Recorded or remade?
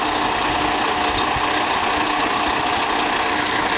recorded